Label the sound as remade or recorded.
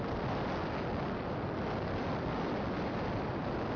recorded